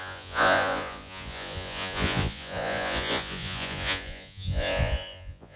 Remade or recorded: remade